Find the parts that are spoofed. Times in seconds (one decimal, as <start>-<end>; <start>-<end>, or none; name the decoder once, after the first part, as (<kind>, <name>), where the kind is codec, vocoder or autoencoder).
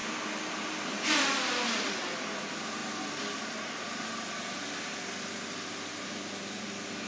none